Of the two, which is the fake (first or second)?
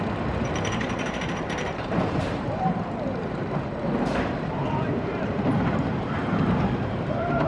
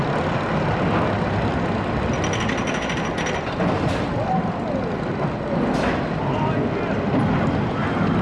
first